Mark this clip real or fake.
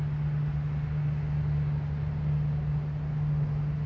real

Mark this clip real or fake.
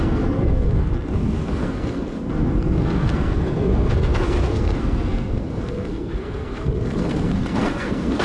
fake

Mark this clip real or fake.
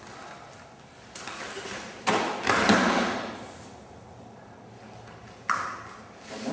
real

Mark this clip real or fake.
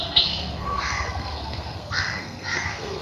fake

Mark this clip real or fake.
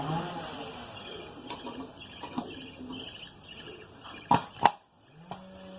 real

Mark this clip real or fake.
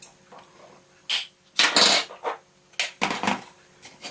real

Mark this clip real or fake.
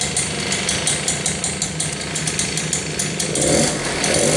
real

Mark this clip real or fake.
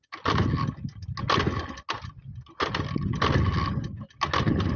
real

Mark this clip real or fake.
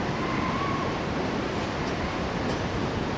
real